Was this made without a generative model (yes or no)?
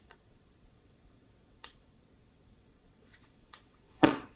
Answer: no